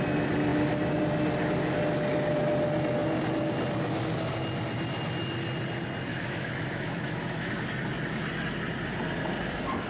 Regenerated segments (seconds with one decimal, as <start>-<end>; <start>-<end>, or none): 6.1-7.5